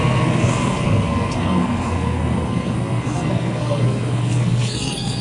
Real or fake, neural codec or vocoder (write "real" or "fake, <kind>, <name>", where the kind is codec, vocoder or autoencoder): fake, codec, SNAC